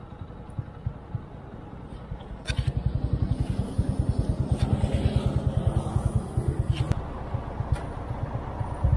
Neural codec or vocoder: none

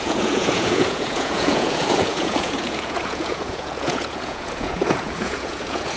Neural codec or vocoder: vocoder, Vocos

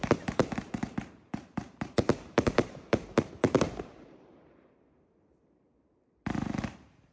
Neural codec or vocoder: vocoder, BigVGAN v2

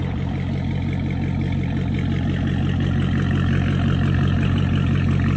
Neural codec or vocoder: vocoder, BigVGAN v2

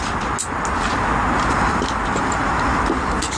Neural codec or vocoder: none